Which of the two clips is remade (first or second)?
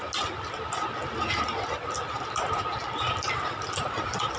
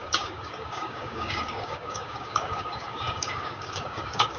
second